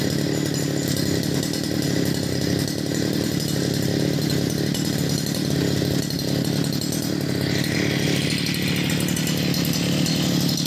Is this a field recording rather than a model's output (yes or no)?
yes